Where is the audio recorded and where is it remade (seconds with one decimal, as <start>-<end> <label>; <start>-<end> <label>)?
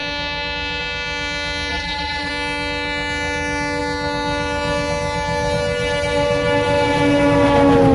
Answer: 0.0-1.7 recorded; 1.7-2.3 remade; 2.3-7.9 recorded